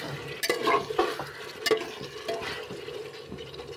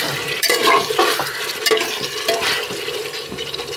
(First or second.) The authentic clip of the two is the first